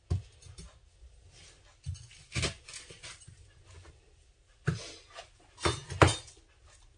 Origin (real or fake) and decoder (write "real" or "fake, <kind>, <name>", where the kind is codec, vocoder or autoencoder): real